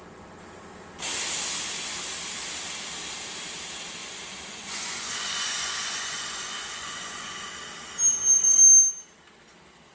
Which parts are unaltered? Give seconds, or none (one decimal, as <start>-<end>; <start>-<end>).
0.0-4.0; 7.6-9.9